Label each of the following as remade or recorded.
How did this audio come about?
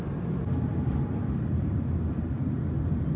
remade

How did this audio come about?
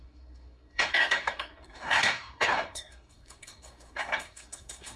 remade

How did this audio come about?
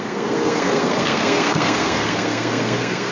remade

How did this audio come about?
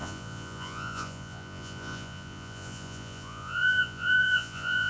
remade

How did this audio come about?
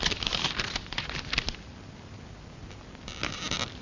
recorded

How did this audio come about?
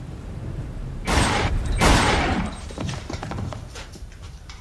remade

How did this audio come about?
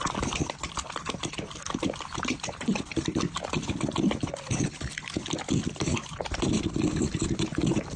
recorded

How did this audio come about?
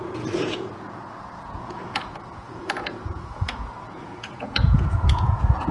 remade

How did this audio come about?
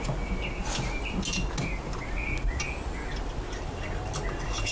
recorded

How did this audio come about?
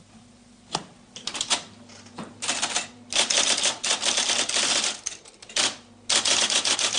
recorded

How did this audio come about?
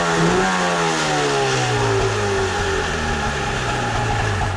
recorded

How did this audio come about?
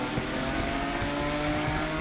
remade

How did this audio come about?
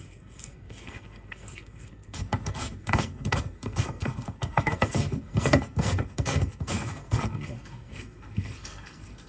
remade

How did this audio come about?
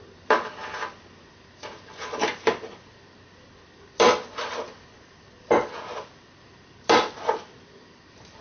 recorded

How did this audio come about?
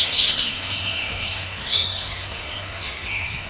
remade